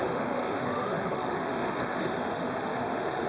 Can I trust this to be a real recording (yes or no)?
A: no